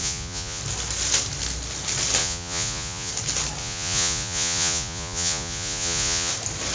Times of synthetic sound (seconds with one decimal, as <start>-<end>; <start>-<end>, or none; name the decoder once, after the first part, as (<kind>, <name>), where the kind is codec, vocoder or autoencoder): 0.0-0.6 (vocoder, Vocos); 2.2-3.1; 3.6-6.3